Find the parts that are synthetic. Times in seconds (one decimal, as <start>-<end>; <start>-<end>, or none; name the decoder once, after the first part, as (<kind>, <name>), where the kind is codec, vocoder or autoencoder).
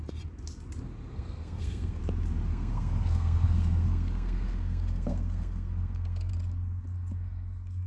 1.1-2.0 (codec, SNAC); 2.5-6.3